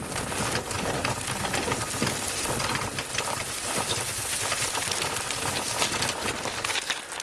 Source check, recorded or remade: recorded